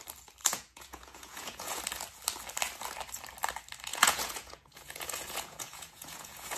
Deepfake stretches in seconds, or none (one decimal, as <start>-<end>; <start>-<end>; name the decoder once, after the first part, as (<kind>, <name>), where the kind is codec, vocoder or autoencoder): 0.4-1.8 (vocoder, Vocos); 3.9-6.6